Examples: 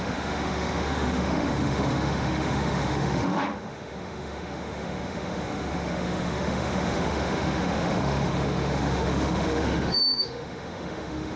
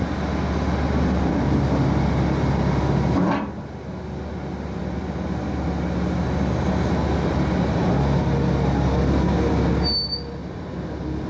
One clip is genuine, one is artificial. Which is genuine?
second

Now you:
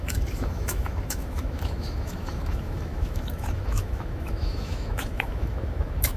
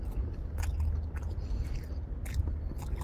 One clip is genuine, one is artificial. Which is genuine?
second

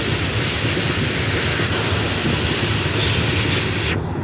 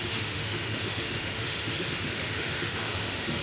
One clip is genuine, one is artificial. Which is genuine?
first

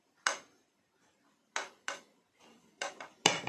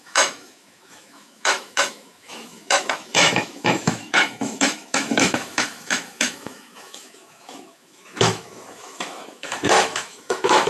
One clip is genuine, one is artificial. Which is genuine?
first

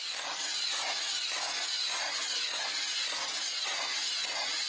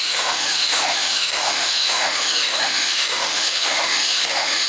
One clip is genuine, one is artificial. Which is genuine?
first